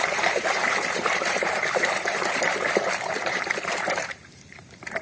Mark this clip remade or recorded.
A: remade